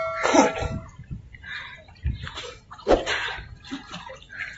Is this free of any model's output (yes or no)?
yes